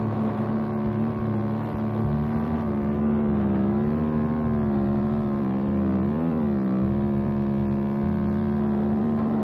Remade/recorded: remade